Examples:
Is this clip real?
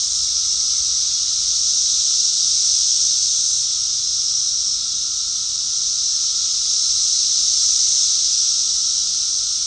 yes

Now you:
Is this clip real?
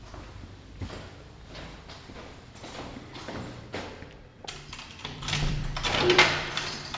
no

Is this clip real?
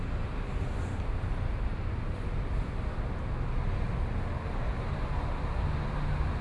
yes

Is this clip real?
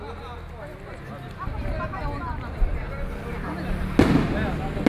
yes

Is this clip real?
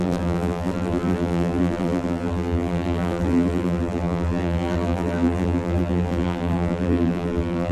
no